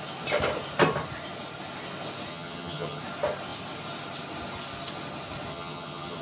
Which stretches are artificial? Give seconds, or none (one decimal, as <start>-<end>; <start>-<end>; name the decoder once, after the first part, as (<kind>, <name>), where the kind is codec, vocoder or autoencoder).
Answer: 2.3-3.0 (vocoder, HiFi-GAN); 5.5-6.2